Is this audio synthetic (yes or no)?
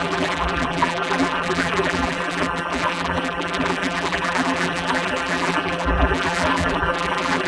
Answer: yes